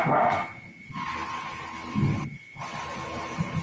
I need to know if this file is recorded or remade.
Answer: recorded